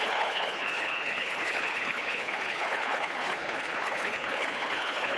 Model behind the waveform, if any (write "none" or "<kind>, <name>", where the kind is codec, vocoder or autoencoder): codec, HILCodec